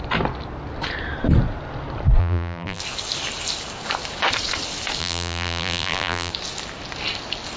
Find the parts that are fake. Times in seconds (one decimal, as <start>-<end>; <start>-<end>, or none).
2.2-2.8; 5.0-6.3